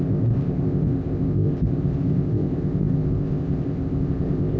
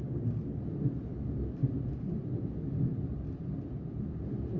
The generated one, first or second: first